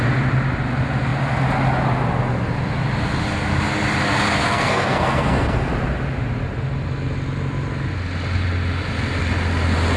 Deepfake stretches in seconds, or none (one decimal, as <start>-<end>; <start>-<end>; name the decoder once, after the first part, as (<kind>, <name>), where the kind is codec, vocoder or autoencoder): 4.4-5.7 (codec, SNAC)